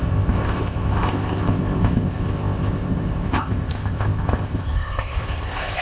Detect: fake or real fake